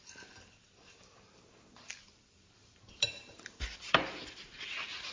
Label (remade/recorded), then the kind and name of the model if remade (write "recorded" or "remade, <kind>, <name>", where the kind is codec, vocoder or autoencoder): recorded